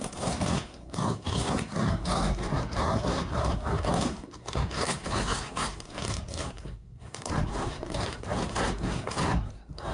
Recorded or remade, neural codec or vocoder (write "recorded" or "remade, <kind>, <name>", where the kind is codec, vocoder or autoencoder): remade, codec, SNAC